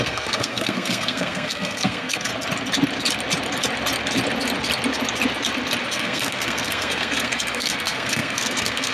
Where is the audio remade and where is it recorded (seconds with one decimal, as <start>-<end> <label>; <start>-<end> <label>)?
0.0-2.3 remade; 2.3-5.9 recorded; 5.9-8.9 remade